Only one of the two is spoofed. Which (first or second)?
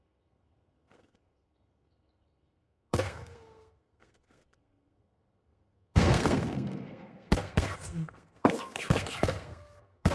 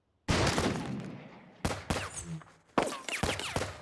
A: first